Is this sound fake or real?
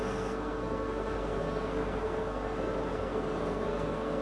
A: fake